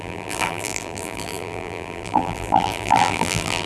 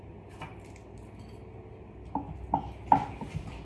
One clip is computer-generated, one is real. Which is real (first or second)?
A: second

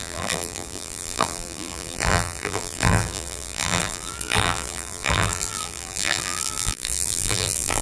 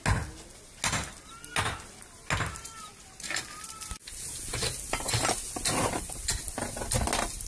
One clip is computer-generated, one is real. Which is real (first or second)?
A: second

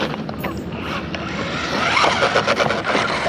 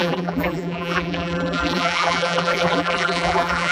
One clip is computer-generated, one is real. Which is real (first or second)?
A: first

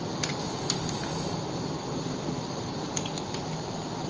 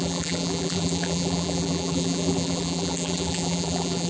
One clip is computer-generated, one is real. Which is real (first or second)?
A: first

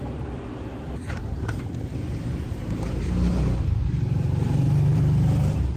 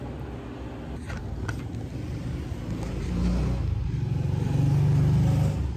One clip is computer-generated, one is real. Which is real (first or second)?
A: second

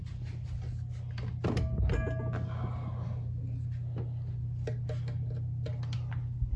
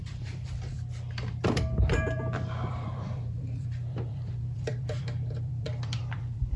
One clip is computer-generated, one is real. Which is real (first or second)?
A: first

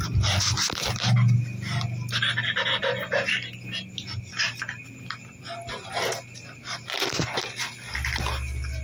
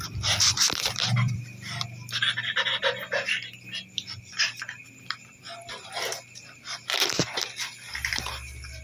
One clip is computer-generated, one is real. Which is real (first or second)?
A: first